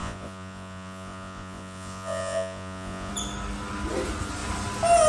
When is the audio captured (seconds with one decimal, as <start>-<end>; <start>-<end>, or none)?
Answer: 3.1-5.1